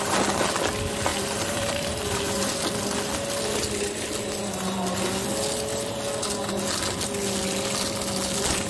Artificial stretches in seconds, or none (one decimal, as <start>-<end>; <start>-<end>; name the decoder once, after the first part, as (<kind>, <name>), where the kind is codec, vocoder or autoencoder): 1.1-2.5 (vocoder, BigVGAN v2)